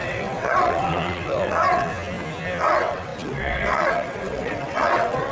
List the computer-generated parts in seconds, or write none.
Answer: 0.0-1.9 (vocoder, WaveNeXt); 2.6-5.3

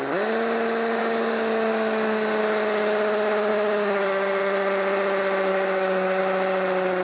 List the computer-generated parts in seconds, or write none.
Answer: 1.0-2.4 (codec, DAC); 3.5-4.4; 5.5-6.2

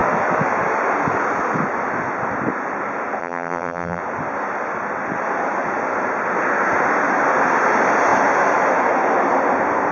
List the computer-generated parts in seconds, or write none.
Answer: 3.2-4.0 (vocoder, BigVGAN v2)

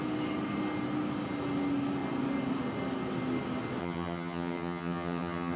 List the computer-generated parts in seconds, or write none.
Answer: 3.8-5.6 (vocoder, HiFi-GAN)

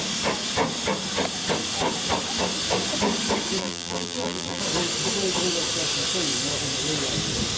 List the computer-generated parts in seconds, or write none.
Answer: 3.6-4.6 (vocoder, BigVGAN v2)

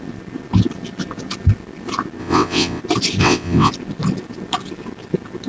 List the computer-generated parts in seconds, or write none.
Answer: 2.2-2.8 (vocoder, WaveNeXt); 3.2-3.7

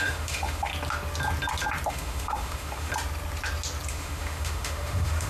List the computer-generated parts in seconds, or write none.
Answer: 0.0-0.7 (autoencoder, DAC-VAE); 1.9-2.9; 3.9-5.3

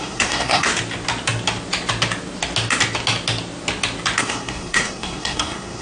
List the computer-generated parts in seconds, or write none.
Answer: 0.0-0.7 (codec, SNAC); 4.2-5.8